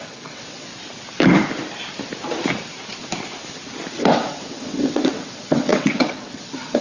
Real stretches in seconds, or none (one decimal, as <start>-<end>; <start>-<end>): 0.7-4.0